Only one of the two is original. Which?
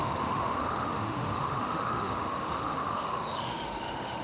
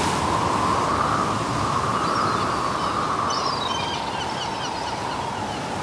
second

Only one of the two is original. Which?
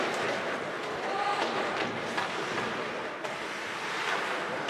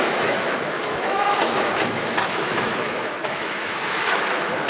first